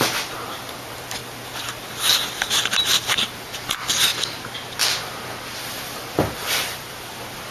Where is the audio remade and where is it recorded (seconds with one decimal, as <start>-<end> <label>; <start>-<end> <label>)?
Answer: 0.0-4.1 remade; 4.1-5.6 recorded; 5.6-7.5 remade

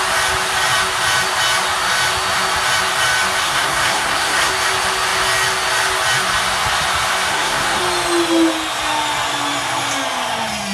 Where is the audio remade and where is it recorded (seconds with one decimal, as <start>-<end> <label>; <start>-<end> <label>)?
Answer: 0.0-3.4 recorded; 3.4-4.5 remade; 4.5-7.3 recorded; 7.3-7.8 remade; 7.8-10.7 recorded

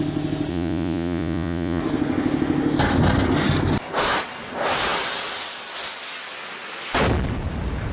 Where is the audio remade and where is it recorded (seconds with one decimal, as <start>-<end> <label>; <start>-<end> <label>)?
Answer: 0.0-0.5 recorded; 0.5-1.8 remade; 1.8-7.9 recorded

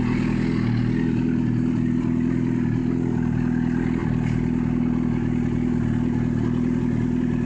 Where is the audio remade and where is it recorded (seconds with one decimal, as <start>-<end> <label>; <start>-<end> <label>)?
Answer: 0.0-7.5 recorded

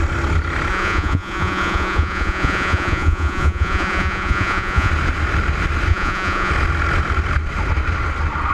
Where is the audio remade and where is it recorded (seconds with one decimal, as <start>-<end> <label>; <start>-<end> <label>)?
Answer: 0.0-0.7 recorded; 0.7-4.9 remade; 4.9-5.9 recorded; 5.9-6.5 remade; 6.5-8.5 recorded

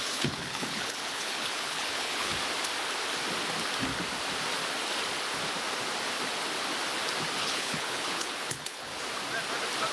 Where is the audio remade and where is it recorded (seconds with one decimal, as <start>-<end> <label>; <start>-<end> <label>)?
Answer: 0.0-2.3 remade; 2.3-7.4 recorded; 7.4-8.9 remade; 8.9-9.9 recorded

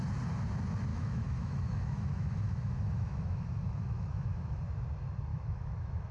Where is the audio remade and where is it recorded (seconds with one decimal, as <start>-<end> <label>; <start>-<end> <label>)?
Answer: 0.0-0.9 recorded; 0.9-4.6 remade; 4.6-5.3 recorded; 5.3-6.1 remade